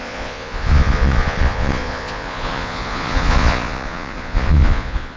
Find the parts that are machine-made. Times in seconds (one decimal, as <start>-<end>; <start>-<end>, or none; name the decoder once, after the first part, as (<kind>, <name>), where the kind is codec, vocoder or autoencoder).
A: 0.0-5.2 (vocoder, Vocos)